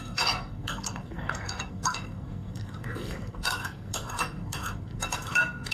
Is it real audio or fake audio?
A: fake